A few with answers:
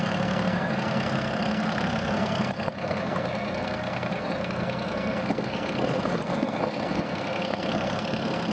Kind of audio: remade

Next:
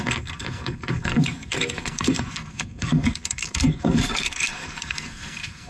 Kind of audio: remade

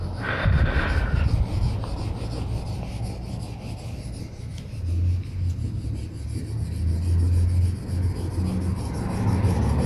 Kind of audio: recorded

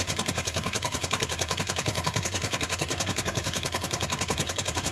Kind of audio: remade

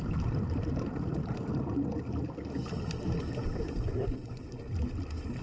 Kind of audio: recorded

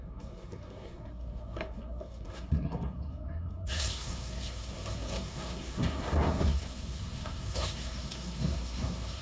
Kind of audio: remade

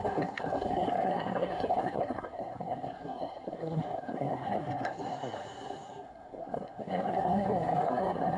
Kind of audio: remade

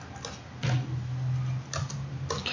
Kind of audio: recorded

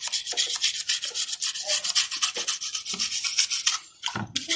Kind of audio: recorded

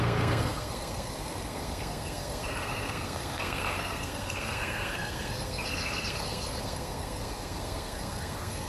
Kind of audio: remade